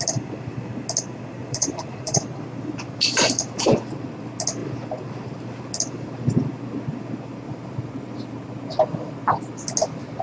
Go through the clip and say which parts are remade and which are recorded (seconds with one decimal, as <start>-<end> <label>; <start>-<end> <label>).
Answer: 0.0-1.4 recorded; 1.4-2.4 remade; 2.4-10.2 recorded